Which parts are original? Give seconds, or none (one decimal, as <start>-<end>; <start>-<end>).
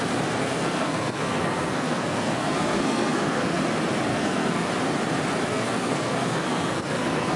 0.0-0.4; 3.6-4.1; 4.7-5.5